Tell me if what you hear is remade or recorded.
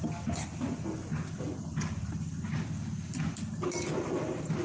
recorded